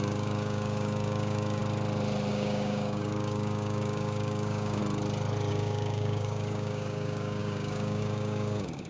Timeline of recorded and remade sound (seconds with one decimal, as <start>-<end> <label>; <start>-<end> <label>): 0.0-1.6 remade; 1.6-2.3 recorded; 2.3-4.8 remade; 4.8-5.5 recorded; 5.5-8.9 remade